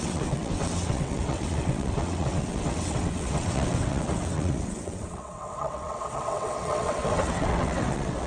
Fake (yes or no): yes